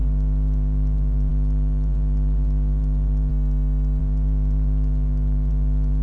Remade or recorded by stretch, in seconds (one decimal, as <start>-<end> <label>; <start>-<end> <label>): 0.0-3.3 remade; 3.3-4.0 recorded; 4.0-6.0 remade